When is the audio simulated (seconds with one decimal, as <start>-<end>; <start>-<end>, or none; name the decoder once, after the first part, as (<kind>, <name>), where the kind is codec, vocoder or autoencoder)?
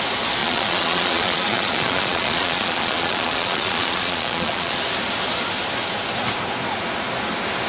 0.4-4.8 (vocoder, Vocos)